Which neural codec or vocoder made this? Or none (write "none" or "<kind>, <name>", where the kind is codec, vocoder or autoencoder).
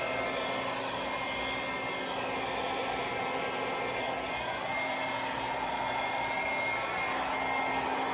none